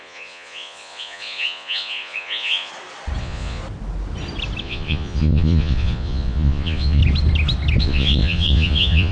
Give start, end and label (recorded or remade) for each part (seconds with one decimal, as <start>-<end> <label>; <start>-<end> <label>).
0.0-2.7 remade; 2.7-3.2 recorded; 3.2-3.6 remade; 3.6-4.6 recorded; 4.6-7.0 remade; 7.0-7.8 recorded; 7.8-9.1 remade